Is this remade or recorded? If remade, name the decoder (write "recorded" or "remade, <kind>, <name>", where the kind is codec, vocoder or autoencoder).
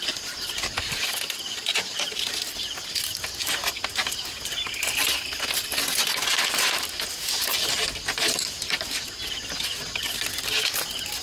recorded